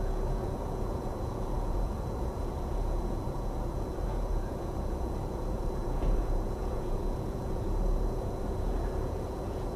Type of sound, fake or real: fake